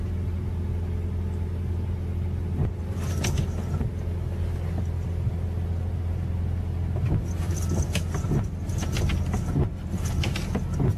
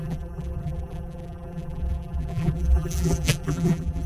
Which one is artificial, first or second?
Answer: second